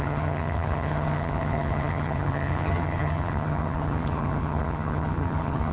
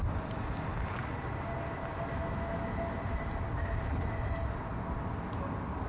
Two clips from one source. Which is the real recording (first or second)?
second